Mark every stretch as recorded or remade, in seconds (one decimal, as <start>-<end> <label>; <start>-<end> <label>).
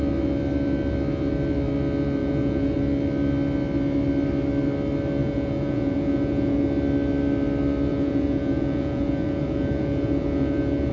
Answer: 0.0-2.2 recorded; 2.2-2.8 remade; 2.8-5.2 recorded; 5.2-6.6 remade; 6.6-7.9 recorded; 7.9-10.9 remade